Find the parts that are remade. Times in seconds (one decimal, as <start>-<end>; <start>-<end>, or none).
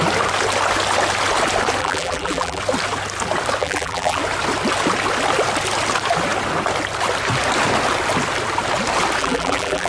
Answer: 1.8-2.6; 3.6-4.2; 9.2-9.9